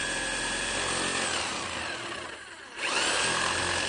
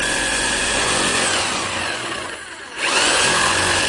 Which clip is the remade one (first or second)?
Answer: second